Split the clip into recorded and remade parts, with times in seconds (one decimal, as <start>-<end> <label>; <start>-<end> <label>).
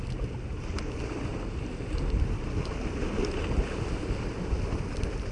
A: 0.0-5.3 recorded